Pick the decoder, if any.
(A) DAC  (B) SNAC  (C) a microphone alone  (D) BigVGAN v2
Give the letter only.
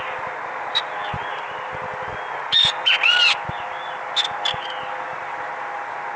C